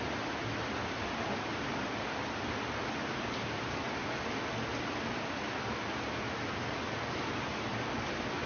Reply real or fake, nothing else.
real